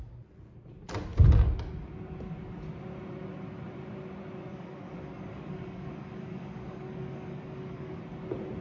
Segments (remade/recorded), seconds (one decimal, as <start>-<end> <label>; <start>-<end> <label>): 0.0-4.5 recorded; 4.5-8.0 remade; 8.0-8.6 recorded